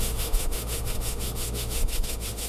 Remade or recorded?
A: remade